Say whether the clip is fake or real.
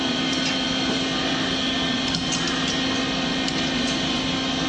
real